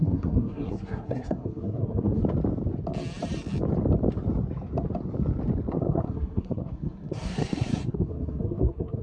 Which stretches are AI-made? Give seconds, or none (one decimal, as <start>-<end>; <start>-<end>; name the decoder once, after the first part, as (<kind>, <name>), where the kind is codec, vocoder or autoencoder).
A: 0.0-2.2 (codec, SNAC); 5.7-9.0